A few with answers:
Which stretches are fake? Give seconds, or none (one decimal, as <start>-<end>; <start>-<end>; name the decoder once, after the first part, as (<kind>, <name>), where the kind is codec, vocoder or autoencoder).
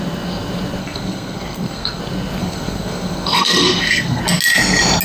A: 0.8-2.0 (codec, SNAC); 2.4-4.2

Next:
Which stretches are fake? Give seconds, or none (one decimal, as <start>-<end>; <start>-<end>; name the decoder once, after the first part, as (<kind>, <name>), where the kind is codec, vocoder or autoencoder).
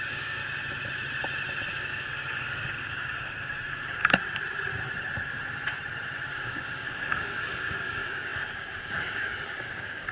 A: 0.0-0.4 (codec, DAC); 1.7-4.0; 6.3-10.1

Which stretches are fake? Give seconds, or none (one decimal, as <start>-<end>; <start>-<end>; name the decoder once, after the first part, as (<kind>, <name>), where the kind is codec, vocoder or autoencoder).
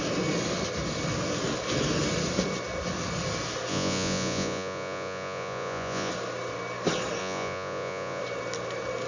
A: 3.7-6.1 (vocoder, Vocos); 7.2-8.2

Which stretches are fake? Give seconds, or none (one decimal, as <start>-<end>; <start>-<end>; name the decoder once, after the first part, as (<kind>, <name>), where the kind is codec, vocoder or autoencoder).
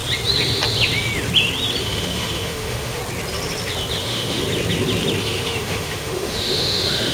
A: 1.8-3.0 (autoencoder, DAC-VAE); 4.0-4.4; 5.2-7.1